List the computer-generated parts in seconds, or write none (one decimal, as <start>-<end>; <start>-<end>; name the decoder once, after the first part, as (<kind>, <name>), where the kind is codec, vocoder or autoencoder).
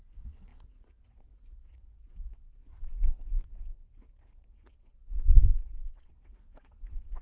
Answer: 0.0-7.2 (vocoder, WaveNeXt)